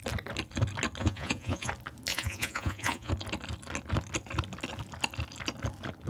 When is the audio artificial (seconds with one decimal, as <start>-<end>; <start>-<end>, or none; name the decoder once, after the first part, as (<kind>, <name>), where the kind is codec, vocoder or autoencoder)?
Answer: 1.0-1.7 (vocoder, Vocos); 2.1-3.1